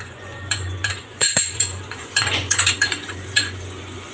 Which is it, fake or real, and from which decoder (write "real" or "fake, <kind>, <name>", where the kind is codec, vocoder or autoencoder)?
fake, vocoder, Vocos